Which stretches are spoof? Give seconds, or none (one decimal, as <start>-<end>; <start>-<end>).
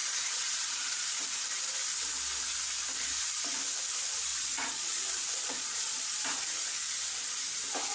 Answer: 0.0-1.2; 4.3-6.0